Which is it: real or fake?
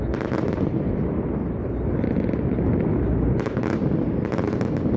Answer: real